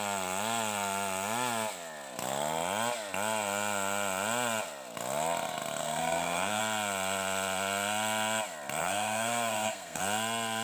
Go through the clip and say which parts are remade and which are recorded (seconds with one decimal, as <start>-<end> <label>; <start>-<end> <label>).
0.0-5.8 recorded; 5.8-6.6 remade; 6.6-8.8 recorded; 8.8-10.0 remade; 10.0-10.6 recorded